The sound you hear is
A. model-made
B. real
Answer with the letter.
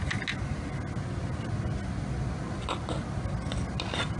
B